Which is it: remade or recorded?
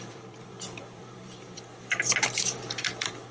remade